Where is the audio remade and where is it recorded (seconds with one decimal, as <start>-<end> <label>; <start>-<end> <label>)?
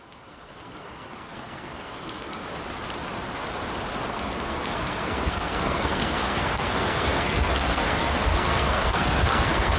0.0-2.4 remade; 2.4-4.1 recorded; 4.1-9.8 remade